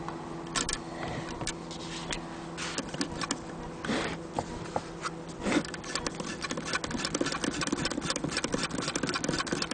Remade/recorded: recorded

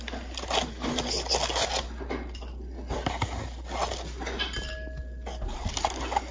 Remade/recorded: recorded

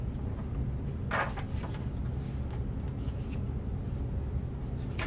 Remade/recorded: recorded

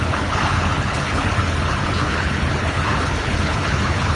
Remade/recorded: remade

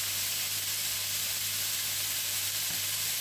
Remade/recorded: recorded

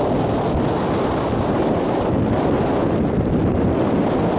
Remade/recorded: recorded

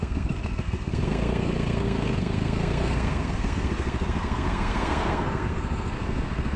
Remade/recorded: remade